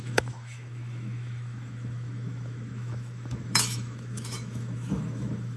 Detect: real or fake fake